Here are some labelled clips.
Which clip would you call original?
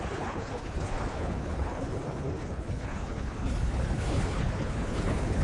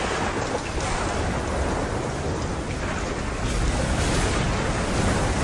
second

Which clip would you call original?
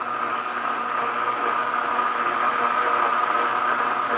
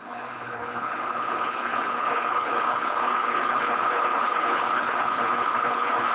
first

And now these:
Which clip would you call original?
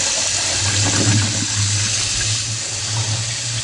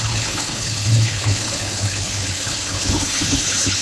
first